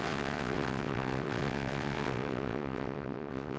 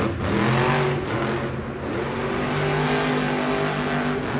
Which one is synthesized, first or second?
first